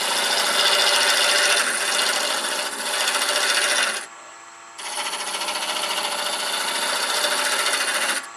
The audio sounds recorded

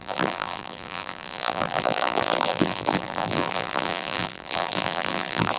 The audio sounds remade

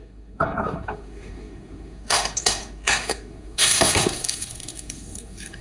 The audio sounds remade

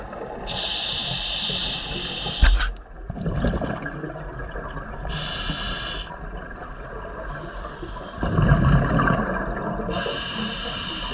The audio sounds recorded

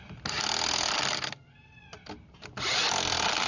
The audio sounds recorded